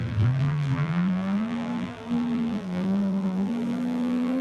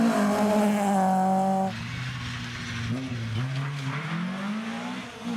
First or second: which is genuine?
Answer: second